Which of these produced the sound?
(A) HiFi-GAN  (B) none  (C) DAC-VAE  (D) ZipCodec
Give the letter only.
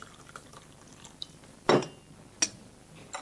B